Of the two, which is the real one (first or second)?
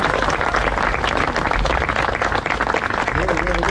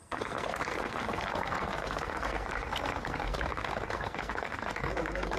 first